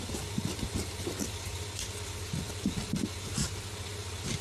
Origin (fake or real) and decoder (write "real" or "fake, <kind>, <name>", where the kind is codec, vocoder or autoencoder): real